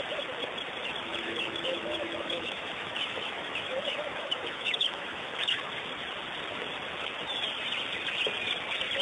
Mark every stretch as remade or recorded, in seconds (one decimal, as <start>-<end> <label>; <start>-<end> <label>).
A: 0.0-1.1 recorded; 1.1-5.7 remade; 5.7-9.0 recorded